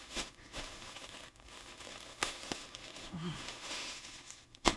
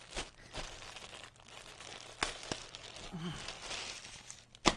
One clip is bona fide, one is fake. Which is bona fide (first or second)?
second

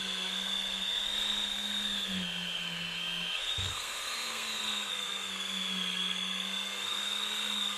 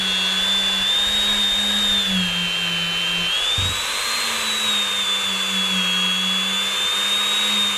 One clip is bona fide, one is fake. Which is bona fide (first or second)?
second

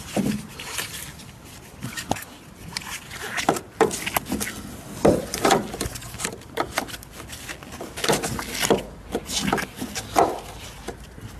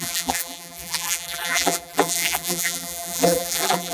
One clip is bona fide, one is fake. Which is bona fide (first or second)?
first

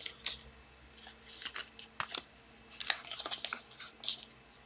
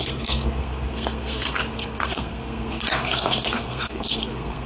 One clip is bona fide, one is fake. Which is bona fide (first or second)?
first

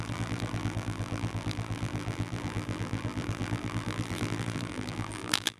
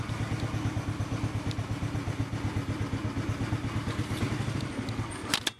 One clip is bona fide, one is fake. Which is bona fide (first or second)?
second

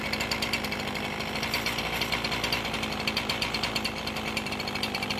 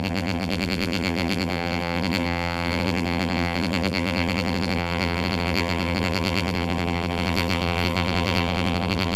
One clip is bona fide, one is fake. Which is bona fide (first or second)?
first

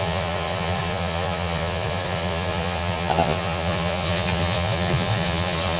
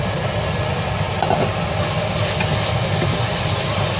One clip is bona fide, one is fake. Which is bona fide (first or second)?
second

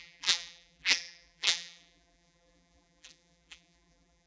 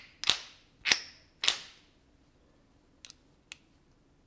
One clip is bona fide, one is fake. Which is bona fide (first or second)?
second